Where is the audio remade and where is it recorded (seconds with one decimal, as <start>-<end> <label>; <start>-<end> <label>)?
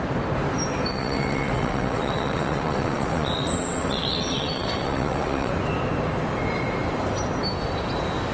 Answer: 0.0-0.9 recorded; 0.9-5.5 remade; 5.5-8.3 recorded